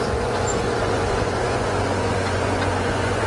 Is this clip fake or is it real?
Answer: fake